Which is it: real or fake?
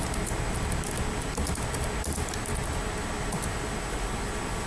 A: real